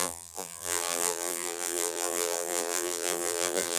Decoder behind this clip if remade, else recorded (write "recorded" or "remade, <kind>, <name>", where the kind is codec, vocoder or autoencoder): remade, vocoder, BigVGAN v2